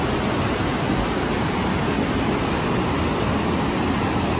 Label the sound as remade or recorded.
recorded